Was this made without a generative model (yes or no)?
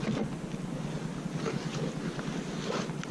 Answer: yes